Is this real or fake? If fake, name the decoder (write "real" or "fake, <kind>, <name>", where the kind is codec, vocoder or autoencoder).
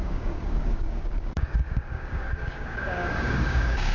fake, codec, DAC